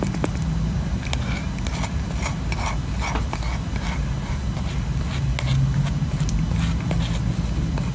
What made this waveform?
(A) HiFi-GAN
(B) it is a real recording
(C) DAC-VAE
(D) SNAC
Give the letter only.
B